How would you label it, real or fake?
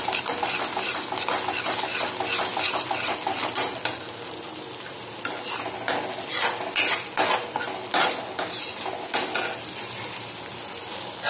real